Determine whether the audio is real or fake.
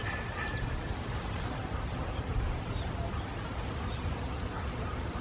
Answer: real